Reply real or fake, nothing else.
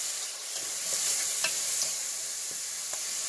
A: real